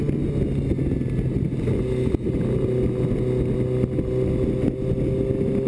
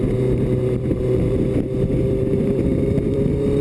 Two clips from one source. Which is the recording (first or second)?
first